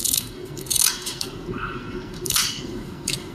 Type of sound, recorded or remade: remade